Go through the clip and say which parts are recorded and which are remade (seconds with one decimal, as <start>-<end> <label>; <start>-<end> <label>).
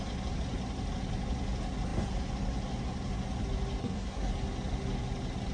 0.0-3.8 recorded; 3.8-4.3 remade; 4.3-5.5 recorded